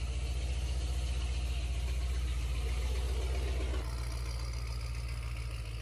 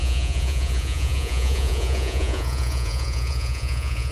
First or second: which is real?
first